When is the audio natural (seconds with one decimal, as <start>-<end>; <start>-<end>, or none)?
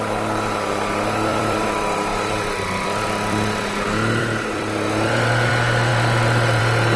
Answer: 0.0-1.3; 5.5-5.9; 6.6-7.0